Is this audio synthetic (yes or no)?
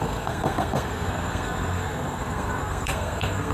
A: yes